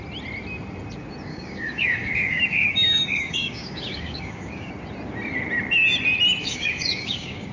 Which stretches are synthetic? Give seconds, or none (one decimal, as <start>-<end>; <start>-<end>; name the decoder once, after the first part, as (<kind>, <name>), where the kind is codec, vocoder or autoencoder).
1.3-4.7 (codec, DAC); 6.4-7.5